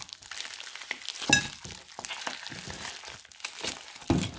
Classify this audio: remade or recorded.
recorded